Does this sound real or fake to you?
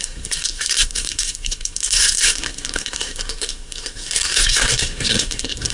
fake